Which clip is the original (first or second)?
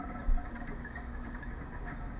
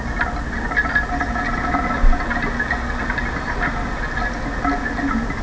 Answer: second